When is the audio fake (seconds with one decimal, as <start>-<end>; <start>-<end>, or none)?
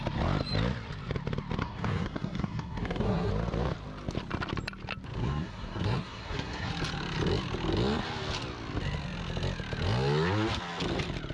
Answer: 1.6-3.3; 5.2-6.7